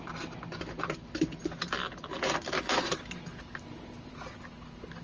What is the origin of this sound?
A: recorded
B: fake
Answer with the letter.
A